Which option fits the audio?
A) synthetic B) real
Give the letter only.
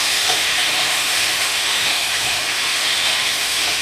A